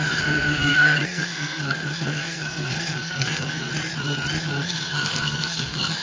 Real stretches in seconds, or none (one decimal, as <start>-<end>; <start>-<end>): 3.7-4.4